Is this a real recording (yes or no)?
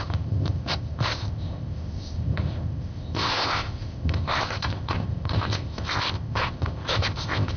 no